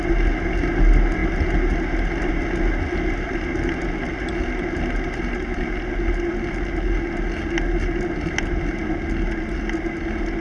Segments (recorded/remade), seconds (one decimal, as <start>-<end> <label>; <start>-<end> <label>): 0.0-10.4 recorded